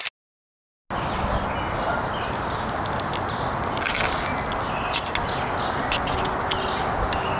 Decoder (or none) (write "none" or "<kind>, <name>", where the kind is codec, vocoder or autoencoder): none